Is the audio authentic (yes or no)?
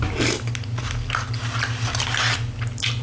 yes